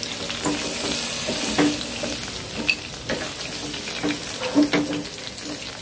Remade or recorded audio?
recorded